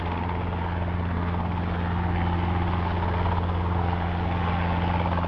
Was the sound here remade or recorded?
recorded